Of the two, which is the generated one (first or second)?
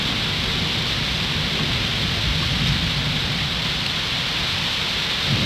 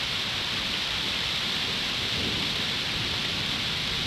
second